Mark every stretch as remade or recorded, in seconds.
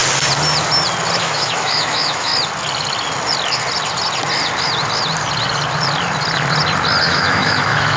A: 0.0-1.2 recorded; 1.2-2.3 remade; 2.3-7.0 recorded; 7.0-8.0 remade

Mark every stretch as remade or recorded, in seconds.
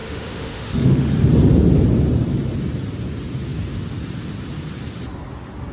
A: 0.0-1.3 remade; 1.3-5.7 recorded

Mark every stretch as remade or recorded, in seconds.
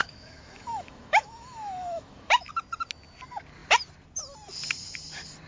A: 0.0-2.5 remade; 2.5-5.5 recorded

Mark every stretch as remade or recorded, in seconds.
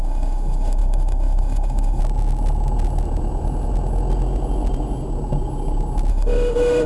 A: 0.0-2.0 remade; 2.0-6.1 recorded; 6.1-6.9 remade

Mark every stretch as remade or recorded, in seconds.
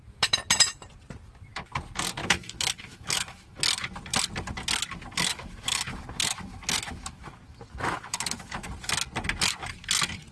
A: 0.0-2.2 recorded; 2.2-3.6 remade; 3.6-5.3 recorded; 5.3-8.7 remade; 8.7-10.3 recorded